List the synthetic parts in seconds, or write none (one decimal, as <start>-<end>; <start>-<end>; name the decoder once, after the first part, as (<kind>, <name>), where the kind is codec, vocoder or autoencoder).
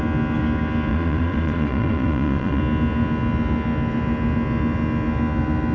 0.9-2.6 (vocoder, Vocos)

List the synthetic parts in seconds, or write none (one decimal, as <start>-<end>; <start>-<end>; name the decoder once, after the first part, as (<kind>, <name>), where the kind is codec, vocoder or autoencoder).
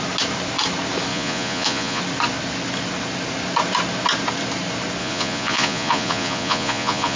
1.1-2.0 (vocoder, Vocos); 5.0-7.2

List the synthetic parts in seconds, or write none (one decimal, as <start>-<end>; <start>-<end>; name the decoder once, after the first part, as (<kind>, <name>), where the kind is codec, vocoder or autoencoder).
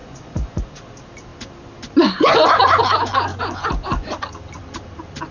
0.0-0.6 (vocoder, Vocos); 3.3-4.1